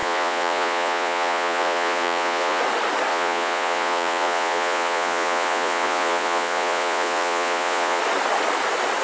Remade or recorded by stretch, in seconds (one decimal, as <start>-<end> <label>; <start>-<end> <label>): 0.0-2.6 remade; 2.6-3.1 recorded; 3.1-8.0 remade; 8.0-9.0 recorded

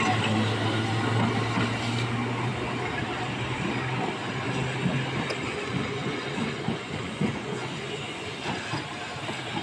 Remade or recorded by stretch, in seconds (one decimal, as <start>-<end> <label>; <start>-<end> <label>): 0.0-5.5 recorded; 5.5-8.5 remade; 8.5-9.6 recorded

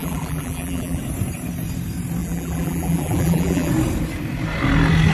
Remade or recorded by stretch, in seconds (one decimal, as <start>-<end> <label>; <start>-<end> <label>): 0.0-1.0 remade; 1.0-2.2 recorded; 2.2-3.7 remade; 3.7-5.1 recorded

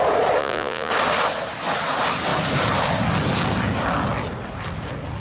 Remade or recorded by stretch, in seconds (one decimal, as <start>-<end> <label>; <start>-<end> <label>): 0.0-0.4 recorded; 0.4-0.9 remade; 0.9-5.2 recorded

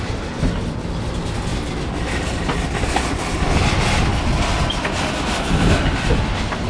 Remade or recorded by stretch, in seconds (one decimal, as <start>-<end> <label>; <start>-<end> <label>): 0.0-6.7 recorded

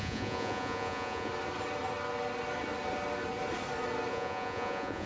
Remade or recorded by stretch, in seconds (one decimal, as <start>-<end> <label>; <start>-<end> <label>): 0.0-1.3 remade; 1.3-4.1 recorded; 4.1-5.1 remade

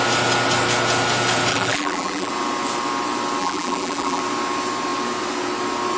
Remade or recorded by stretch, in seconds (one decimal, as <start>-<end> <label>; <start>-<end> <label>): 0.0-1.5 recorded; 1.5-2.3 remade; 2.3-3.4 recorded; 3.4-4.2 remade; 4.2-6.0 recorded

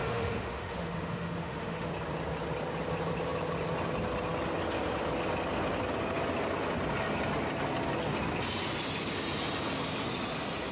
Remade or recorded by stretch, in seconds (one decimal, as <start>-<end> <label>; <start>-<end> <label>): 0.0-1.9 remade; 1.9-10.7 recorded